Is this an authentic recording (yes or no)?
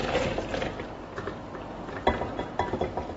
no